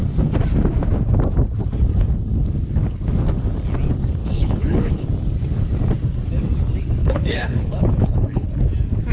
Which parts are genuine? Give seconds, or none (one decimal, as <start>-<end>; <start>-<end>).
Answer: 0.0-4.2; 5.1-7.0; 8.5-9.1